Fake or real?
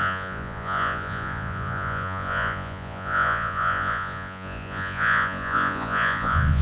fake